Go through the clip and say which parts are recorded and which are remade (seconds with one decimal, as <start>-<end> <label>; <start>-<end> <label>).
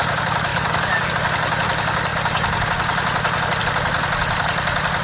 0.0-0.5 recorded; 0.5-1.1 remade; 1.1-5.0 recorded